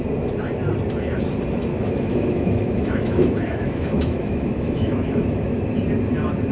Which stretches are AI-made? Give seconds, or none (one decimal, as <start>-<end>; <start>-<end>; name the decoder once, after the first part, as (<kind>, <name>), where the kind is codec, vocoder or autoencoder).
1.7-5.6 (autoencoder, DAC-VAE)

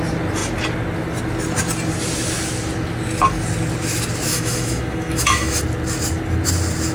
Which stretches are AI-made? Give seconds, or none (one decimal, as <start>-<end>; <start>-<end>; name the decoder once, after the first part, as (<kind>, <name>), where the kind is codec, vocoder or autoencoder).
4.3-5.6 (autoencoder, DAC-VAE)